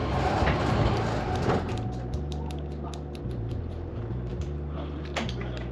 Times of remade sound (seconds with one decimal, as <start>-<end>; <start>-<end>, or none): 3.2-5.7